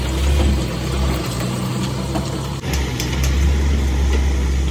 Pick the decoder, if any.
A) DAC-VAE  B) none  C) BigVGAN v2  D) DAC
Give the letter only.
B